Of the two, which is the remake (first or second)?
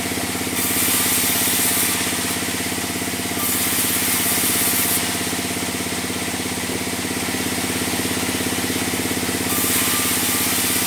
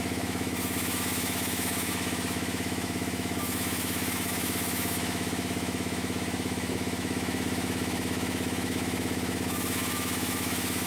second